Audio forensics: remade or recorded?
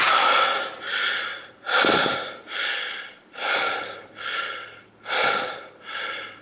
remade